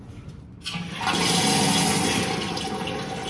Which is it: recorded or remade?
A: recorded